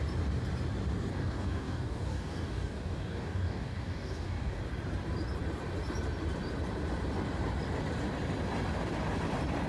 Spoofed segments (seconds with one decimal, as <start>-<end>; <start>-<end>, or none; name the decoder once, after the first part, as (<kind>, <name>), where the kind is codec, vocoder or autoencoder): 1.1-4.6 (codec, DAC)